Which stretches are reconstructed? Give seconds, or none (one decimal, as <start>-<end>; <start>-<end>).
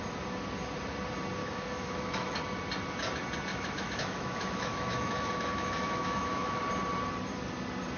1.4-2.4; 3.5-6.6